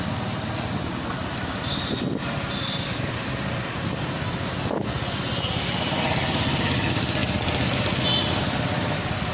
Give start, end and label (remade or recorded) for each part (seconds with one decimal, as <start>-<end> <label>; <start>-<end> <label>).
0.0-9.3 recorded